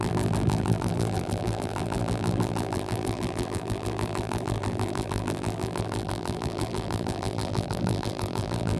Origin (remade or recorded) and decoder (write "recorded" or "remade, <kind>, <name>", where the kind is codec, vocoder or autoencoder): remade, vocoder, BigVGAN v2